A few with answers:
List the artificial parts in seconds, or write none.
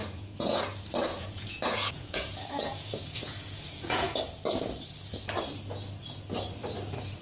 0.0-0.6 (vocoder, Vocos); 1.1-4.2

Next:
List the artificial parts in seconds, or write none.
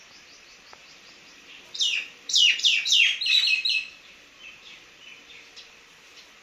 0.8-3.2 (vocoder, BigVGAN v2)